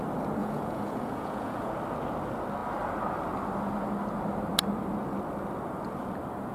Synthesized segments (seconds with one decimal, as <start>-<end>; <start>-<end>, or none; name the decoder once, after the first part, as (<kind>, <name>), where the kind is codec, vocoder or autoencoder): 0.4-1.7 (vocoder, Vocos)